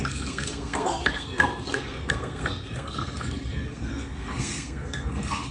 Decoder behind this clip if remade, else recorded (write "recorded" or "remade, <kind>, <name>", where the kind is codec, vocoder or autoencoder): remade, codec, SNAC